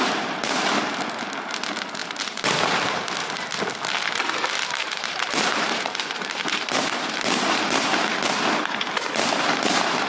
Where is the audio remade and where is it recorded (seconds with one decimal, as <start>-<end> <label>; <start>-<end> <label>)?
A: 0.0-2.0 recorded; 2.0-2.6 remade; 2.6-4.8 recorded; 4.8-8.2 remade; 8.2-10.1 recorded